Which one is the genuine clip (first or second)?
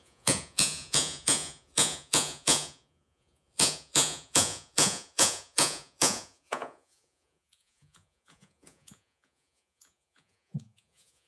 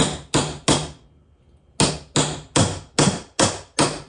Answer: second